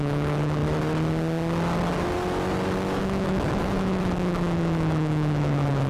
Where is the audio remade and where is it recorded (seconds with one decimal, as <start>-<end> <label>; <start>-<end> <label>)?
0.0-0.6 remade; 0.6-3.0 recorded; 3.0-5.9 remade